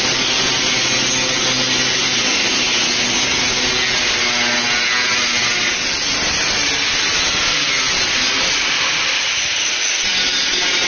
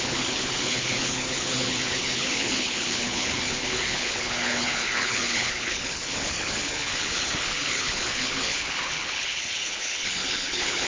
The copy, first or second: second